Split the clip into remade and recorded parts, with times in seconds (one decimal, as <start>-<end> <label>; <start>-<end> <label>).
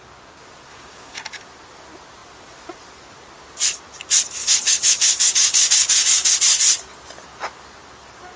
0.0-0.7 recorded; 0.7-1.2 remade; 1.2-4.4 recorded; 4.4-6.3 remade; 6.3-8.4 recorded